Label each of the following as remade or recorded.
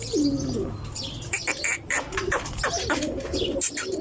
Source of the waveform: recorded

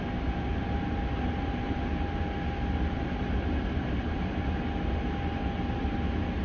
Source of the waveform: recorded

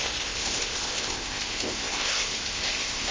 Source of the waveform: remade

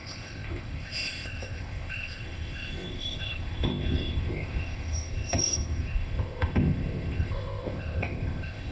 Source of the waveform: remade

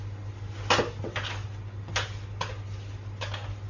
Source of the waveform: recorded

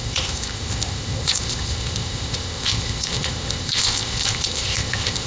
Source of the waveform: remade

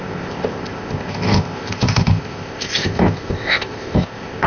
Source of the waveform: remade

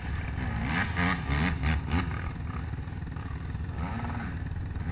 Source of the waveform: recorded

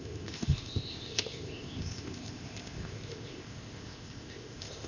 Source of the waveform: remade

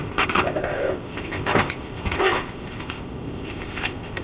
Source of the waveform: remade